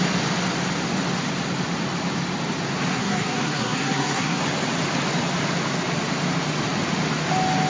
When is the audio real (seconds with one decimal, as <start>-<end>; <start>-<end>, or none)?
0.0-2.9; 4.4-7.7